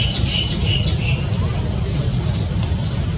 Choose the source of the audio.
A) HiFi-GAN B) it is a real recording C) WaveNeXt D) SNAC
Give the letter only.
B